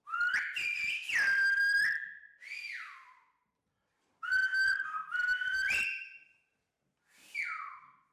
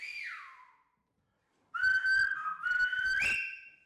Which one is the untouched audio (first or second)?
second